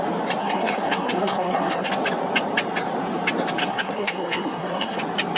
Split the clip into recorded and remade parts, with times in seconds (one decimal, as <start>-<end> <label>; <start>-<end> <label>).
0.0-0.4 recorded; 0.4-1.9 remade; 1.9-3.6 recorded; 3.6-5.0 remade; 5.0-5.4 recorded